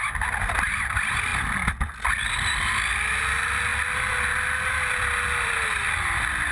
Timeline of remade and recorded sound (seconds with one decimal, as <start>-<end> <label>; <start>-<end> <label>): 0.0-1.3 remade; 1.3-3.2 recorded; 3.2-3.7 remade; 3.7-4.9 recorded; 4.9-6.5 remade